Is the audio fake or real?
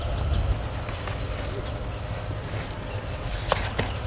real